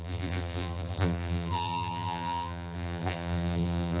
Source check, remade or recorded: remade